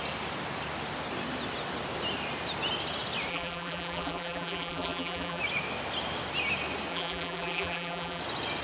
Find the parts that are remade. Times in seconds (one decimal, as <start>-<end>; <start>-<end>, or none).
3.3-5.4; 6.9-8.2